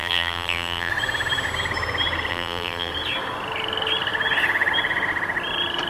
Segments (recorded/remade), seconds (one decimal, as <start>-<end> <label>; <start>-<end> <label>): 0.0-0.9 remade; 0.9-2.3 recorded; 2.3-2.9 remade; 2.9-5.9 recorded